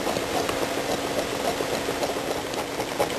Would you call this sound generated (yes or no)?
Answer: no